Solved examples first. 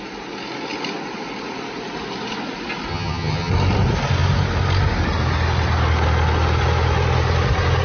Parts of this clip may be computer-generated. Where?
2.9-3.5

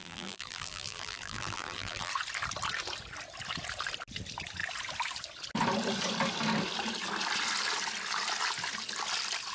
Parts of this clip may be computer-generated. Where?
0.0-2.1

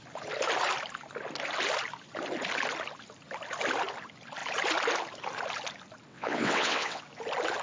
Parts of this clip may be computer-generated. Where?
6.1-7.0

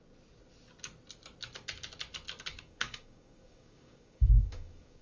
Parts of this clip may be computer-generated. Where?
2.5-5.0

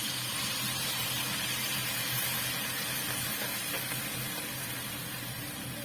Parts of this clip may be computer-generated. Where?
0.0-1.8; 5.3-5.8

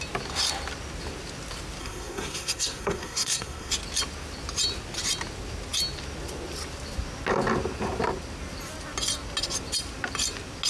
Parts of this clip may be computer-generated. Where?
1.8-3.7

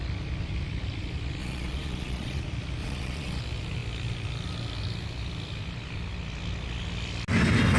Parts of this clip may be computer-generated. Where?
1.4-2.4; 2.8-3.4